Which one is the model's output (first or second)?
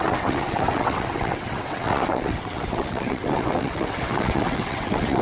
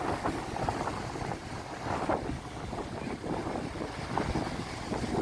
first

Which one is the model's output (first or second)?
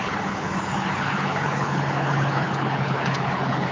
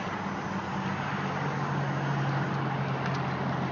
first